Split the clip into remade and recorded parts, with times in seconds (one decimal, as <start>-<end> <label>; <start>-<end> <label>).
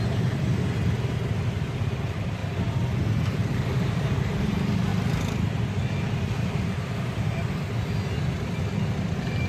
0.0-2.4 recorded; 2.4-4.5 remade; 4.5-9.5 recorded